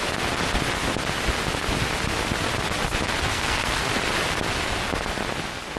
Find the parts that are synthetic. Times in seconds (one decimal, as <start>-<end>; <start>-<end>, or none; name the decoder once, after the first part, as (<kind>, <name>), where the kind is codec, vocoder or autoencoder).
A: 3.3-3.8 (codec, SNAC)